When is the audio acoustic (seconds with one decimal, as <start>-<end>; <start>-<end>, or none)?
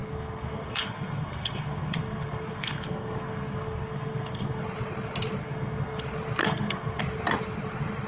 4.6-5.4; 6.0-6.4; 7.0-8.1